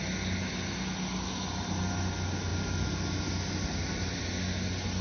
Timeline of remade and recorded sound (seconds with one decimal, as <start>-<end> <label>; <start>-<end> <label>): 0.0-5.0 recorded